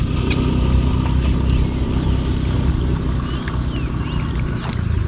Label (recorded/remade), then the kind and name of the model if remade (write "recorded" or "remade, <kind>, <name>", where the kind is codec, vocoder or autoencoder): recorded